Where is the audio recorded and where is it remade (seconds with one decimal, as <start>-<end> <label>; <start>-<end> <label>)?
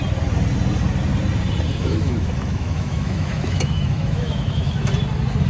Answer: 0.0-1.7 recorded; 1.7-4.9 remade; 4.9-5.5 recorded